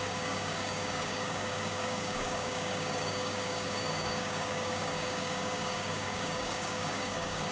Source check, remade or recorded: remade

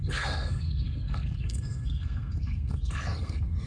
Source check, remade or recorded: remade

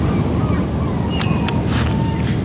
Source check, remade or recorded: recorded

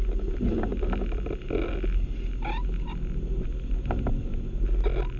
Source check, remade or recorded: recorded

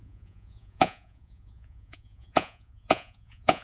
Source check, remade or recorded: remade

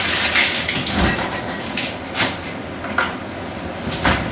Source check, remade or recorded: recorded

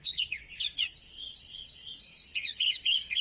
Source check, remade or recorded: remade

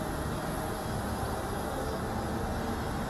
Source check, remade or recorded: recorded